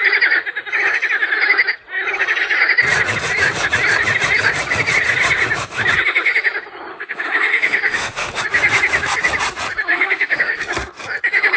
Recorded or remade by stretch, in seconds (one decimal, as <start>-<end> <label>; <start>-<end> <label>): 0.0-6.9 recorded; 6.9-8.4 remade; 8.4-9.9 recorded; 9.9-10.6 remade; 10.6-11.6 recorded